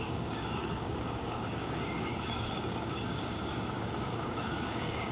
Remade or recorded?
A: remade